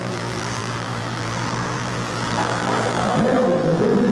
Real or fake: fake